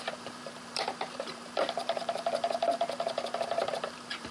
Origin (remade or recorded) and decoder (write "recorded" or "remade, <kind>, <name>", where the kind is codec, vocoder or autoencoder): remade, vocoder, BigVGAN v2